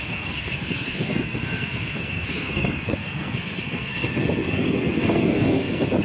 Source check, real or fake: fake